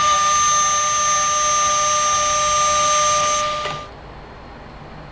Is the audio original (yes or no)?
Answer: yes